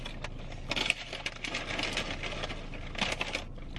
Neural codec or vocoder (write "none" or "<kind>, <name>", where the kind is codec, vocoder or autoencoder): none